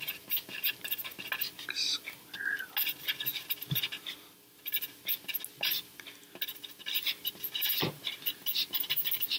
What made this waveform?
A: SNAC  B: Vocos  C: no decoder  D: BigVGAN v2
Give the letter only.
C